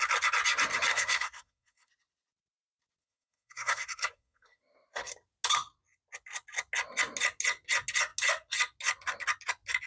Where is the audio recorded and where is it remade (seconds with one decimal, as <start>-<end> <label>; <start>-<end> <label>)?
0.0-0.9 recorded; 0.9-1.9 remade; 1.9-3.0 recorded; 3.0-4.6 remade; 4.6-9.9 recorded